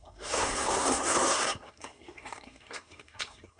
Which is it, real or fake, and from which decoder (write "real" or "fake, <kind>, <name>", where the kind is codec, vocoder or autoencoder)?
fake, codec, SNAC